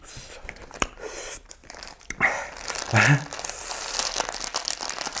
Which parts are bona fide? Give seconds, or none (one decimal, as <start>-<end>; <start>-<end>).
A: 0.0-0.6; 2.0-5.2

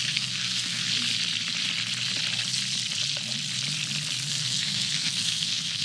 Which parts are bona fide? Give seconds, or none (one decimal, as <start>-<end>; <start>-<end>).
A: 0.8-4.3

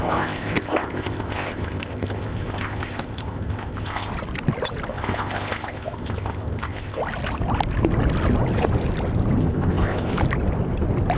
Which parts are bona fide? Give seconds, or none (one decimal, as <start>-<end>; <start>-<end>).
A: 4.1-4.9; 7.0-9.4; 10.1-11.2

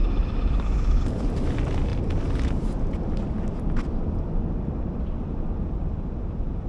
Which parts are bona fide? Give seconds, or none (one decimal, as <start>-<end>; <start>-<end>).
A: 1.0-6.7

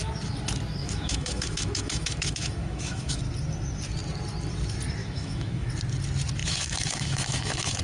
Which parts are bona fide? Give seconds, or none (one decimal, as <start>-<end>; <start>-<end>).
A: 0.0-0.8; 3.2-5.0; 5.7-6.4

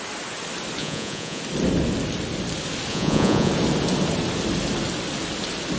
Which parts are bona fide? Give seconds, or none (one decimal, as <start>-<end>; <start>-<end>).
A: 0.0-0.8; 1.4-2.9; 3.5-5.8

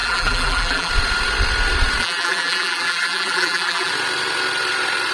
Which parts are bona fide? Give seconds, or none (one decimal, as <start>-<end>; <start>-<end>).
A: 0.9-2.0; 3.9-5.1

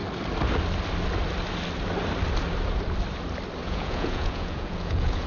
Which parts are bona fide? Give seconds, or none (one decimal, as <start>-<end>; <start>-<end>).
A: 0.0-3.6